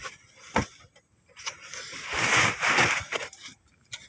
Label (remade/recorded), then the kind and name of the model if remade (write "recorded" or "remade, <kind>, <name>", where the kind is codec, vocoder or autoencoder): recorded